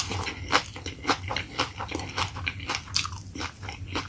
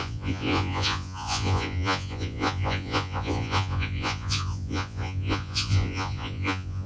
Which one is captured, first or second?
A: first